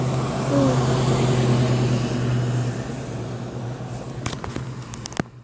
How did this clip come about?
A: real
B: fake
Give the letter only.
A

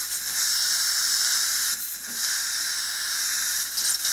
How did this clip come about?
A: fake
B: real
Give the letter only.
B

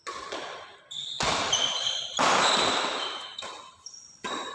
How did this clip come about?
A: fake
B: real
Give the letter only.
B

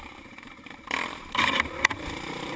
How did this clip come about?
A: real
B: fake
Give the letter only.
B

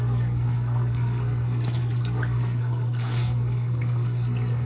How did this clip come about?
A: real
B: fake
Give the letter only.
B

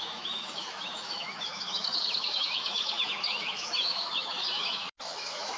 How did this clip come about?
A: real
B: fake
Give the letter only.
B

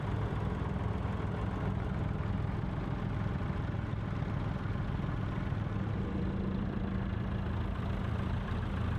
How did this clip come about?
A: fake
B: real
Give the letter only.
B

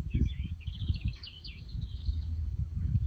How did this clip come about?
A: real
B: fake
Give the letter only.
B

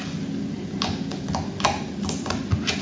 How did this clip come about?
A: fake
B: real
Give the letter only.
B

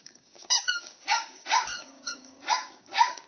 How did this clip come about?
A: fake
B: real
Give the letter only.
A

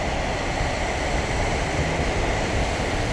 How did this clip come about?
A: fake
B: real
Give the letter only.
B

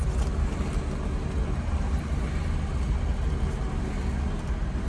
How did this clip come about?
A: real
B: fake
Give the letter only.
A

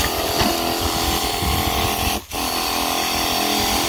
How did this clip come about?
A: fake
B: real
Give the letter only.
B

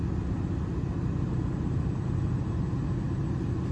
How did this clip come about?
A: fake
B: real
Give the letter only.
B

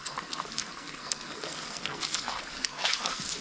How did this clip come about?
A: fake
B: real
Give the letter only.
A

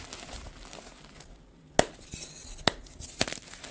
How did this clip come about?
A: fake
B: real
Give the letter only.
B